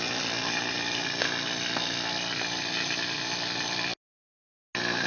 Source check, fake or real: real